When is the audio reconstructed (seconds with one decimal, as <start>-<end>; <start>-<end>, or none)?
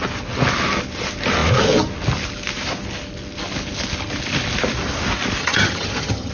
5.4-6.3